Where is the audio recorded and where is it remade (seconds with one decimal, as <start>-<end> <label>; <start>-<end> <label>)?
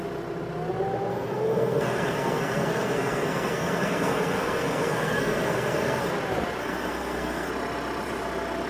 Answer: 0.0-1.1 recorded; 1.1-6.1 remade; 6.1-6.6 recorded; 6.6-7.5 remade; 7.5-8.7 recorded